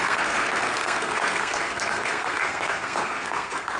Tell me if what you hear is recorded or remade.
remade